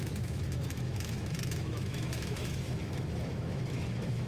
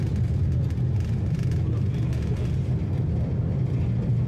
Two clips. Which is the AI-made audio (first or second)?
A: first